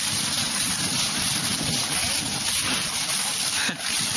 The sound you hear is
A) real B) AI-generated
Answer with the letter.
A